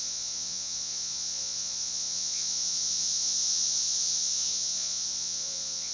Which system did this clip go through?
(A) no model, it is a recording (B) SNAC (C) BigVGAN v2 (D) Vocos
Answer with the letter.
D